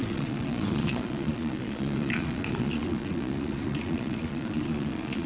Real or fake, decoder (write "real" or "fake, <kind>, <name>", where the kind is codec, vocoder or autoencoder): fake, vocoder, Vocos